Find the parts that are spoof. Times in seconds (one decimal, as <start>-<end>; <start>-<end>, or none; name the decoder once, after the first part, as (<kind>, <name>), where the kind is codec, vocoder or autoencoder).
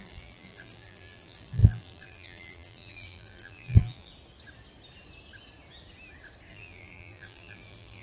0.0-4.1 (vocoder, BigVGAN v2); 6.5-8.0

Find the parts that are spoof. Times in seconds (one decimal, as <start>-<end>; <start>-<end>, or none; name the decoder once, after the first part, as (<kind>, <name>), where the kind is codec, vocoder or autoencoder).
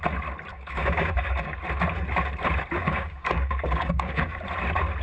0.5-1.6 (codec, DAC); 2.8-4.4